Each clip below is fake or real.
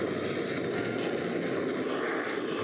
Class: real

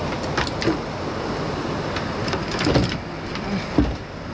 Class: real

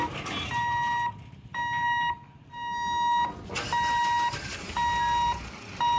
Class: real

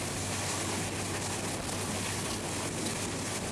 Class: real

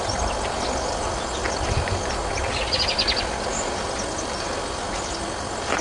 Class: real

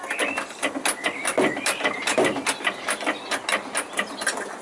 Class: real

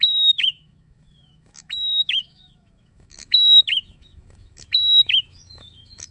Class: fake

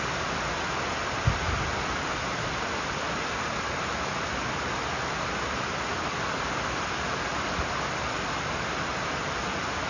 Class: real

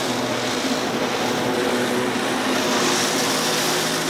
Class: real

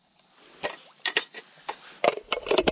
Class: real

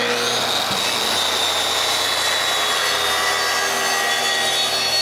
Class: real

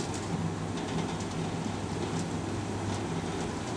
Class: real